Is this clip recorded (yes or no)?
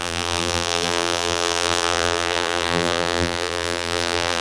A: no